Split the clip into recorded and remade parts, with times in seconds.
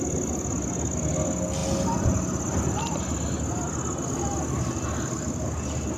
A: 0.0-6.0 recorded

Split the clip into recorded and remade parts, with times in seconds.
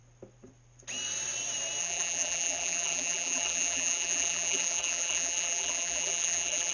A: 0.0-1.8 recorded; 1.8-6.7 remade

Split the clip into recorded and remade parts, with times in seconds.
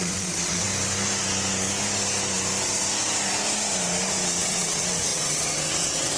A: 0.0-0.7 remade; 0.7-4.4 recorded; 4.4-6.2 remade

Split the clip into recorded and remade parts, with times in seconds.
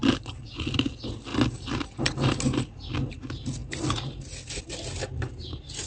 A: 0.0-5.9 recorded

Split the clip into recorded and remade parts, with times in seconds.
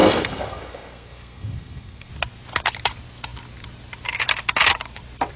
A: 0.0-2.1 remade; 2.1-5.4 recorded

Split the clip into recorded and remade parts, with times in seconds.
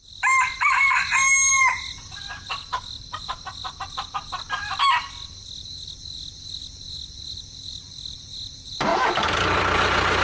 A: 0.0-10.2 recorded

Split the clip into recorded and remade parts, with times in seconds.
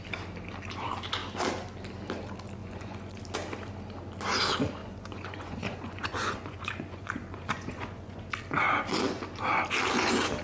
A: 0.0-2.6 recorded; 2.6-3.2 remade; 3.2-4.8 recorded; 4.8-8.2 remade; 8.2-10.4 recorded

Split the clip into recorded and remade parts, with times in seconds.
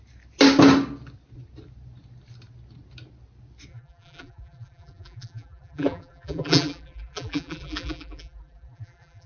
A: 0.0-3.7 recorded; 3.7-9.3 remade